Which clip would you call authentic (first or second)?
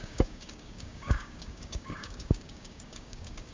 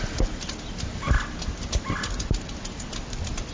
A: second